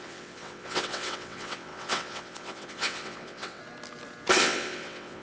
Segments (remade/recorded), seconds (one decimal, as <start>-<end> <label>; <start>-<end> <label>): 0.0-3.6 remade; 3.6-4.4 recorded; 4.4-5.2 remade